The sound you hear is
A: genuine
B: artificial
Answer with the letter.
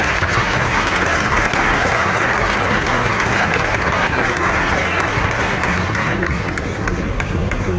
B